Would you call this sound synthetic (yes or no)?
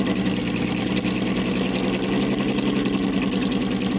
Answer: no